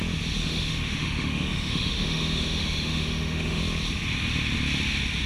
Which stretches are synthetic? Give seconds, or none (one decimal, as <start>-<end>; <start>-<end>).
0.4-3.6